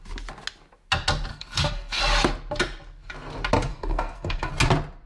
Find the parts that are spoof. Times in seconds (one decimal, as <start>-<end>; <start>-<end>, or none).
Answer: 1.3-2.0; 3.7-4.5